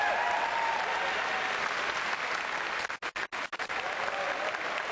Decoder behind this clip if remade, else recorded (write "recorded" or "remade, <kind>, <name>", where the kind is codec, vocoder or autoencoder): recorded